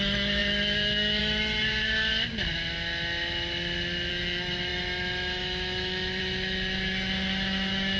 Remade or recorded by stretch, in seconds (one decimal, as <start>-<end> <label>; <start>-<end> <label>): 0.0-2.1 remade; 2.1-4.1 recorded; 4.1-8.0 remade